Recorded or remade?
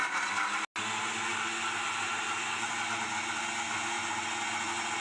recorded